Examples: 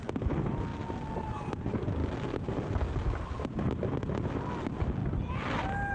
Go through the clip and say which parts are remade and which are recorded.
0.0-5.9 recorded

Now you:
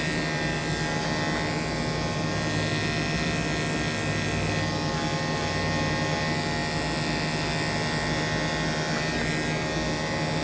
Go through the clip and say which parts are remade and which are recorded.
0.0-10.4 recorded

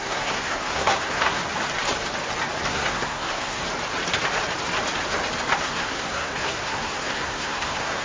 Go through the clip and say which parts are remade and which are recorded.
0.0-1.4 remade; 1.4-2.7 recorded; 2.7-3.6 remade; 3.6-5.6 recorded; 5.6-8.0 remade

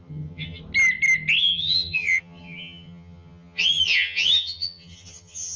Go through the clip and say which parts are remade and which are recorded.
0.0-0.6 remade; 0.6-1.4 recorded; 1.4-5.6 remade

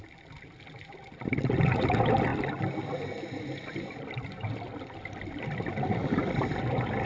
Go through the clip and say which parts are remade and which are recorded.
0.0-7.1 recorded

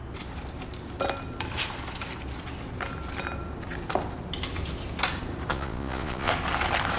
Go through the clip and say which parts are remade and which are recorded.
0.0-5.5 recorded; 5.5-6.3 remade; 6.3-7.0 recorded